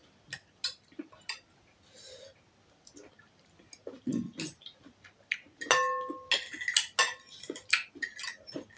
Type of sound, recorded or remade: recorded